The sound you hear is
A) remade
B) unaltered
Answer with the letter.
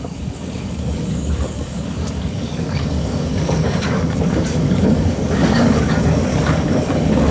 A